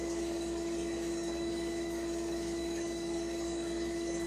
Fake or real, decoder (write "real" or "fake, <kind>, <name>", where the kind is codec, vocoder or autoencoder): fake, codec, DAC